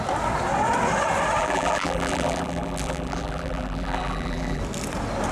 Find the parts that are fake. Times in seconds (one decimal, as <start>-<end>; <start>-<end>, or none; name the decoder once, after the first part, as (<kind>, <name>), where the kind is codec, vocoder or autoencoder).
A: 1.4-4.6 (vocoder, BigVGAN v2)